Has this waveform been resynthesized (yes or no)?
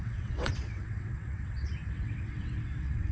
yes